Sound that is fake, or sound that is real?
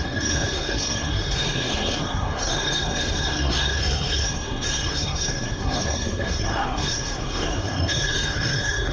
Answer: fake